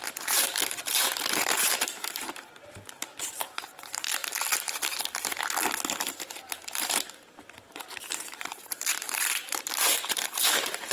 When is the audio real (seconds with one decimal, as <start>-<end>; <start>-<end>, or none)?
4.2-6.4